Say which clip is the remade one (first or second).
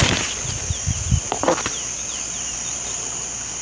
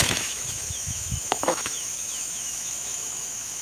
second